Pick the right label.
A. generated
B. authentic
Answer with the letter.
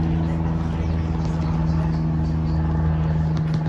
B